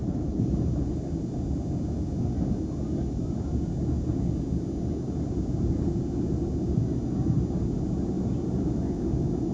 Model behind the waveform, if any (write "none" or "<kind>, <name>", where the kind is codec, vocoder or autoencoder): none